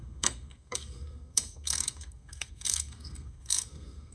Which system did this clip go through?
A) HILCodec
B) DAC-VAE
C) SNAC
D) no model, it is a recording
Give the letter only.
C